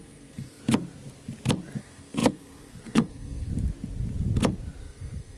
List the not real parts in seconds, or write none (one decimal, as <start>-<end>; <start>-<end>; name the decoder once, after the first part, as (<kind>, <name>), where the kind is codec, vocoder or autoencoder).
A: 0.0-0.6 (codec, SNAC); 1.8-3.5; 4.8-5.4